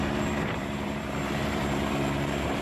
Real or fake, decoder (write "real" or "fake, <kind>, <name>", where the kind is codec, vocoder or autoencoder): fake, vocoder, BigVGAN v2